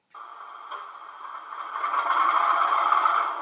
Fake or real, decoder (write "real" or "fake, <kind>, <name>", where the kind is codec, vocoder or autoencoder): real